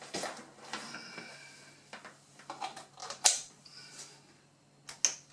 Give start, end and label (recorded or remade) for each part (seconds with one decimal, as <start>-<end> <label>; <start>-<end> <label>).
0.0-3.0 recorded; 3.0-3.9 remade; 3.9-5.3 recorded